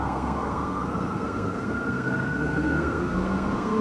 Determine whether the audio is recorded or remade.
remade